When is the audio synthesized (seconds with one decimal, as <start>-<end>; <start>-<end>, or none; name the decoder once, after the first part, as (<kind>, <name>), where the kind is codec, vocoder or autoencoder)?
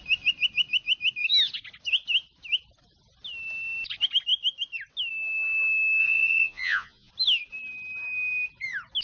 6.0-7.1 (vocoder, Vocos)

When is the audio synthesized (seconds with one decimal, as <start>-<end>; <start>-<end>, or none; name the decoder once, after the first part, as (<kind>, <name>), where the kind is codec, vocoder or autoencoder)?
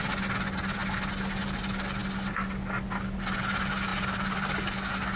none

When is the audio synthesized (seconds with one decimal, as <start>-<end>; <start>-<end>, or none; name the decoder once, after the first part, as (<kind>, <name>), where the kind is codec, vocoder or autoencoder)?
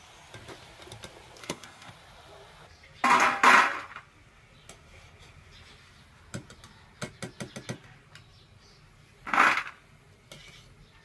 1.4-1.9 (codec, SNAC)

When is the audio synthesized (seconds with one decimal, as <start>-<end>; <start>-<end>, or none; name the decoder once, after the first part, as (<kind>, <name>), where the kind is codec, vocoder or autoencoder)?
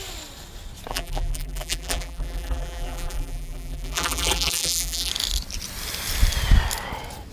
0.9-5.1 (vocoder, BigVGAN v2)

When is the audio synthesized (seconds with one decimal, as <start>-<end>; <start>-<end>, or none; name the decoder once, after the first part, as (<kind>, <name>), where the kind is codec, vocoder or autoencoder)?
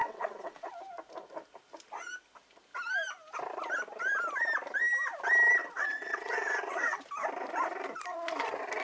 0.0-0.7 (vocoder, WaveNeXt); 5.6-7.0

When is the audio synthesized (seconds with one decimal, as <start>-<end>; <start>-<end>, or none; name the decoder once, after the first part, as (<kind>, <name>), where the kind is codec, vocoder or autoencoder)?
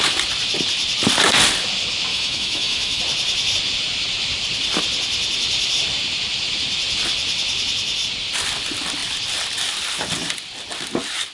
2.1-3.0 (autoencoder, DAC-VAE)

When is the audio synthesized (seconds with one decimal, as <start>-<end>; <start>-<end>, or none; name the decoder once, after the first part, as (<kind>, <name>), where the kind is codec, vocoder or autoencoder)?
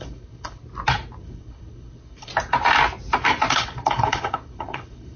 0.0-0.6 (codec, HILCodec); 1.2-2.3; 3.5-5.2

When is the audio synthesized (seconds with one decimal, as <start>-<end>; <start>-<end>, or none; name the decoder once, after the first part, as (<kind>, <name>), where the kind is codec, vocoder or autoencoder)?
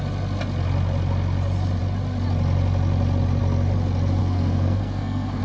4.2-5.4 (codec, SNAC)